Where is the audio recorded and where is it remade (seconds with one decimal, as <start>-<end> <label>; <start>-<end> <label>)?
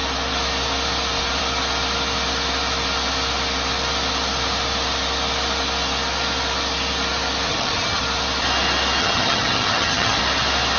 0.0-7.5 recorded; 7.5-8.0 remade; 8.0-9.0 recorded; 9.0-10.2 remade; 10.2-10.8 recorded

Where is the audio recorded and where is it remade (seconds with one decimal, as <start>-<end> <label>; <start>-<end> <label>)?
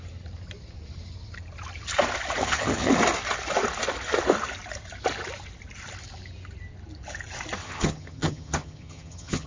0.0-2.4 recorded; 2.4-2.9 remade; 2.9-7.6 recorded; 7.6-9.5 remade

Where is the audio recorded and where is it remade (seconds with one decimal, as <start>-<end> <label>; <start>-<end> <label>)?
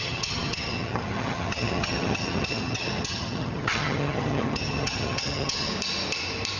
0.0-5.7 remade; 5.7-6.6 recorded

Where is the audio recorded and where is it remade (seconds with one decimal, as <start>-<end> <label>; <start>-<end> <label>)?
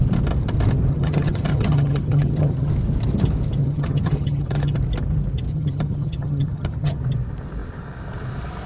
0.0-0.9 recorded; 0.9-2.7 remade; 2.7-3.6 recorded; 3.6-4.8 remade; 4.8-5.5 recorded; 5.5-7.0 remade; 7.0-8.7 recorded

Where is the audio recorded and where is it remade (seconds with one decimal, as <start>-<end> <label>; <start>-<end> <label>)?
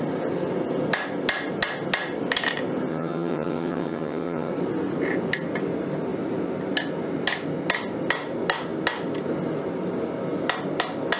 0.0-2.9 recorded; 2.9-4.5 remade; 4.5-11.2 recorded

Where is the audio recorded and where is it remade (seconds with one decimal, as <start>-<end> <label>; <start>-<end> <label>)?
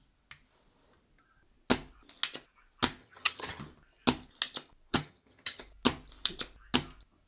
0.0-3.0 recorded; 3.0-3.6 remade; 3.6-4.9 recorded; 4.9-5.6 remade; 5.6-7.3 recorded